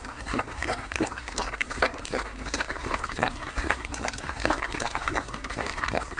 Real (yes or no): no